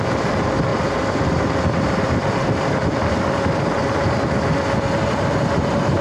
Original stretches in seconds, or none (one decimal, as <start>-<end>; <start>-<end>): 0.0-0.7; 3.4-6.0